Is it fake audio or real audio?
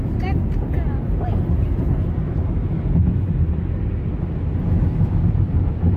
real